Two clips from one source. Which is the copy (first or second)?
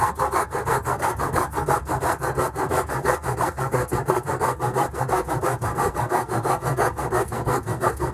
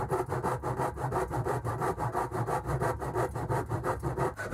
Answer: first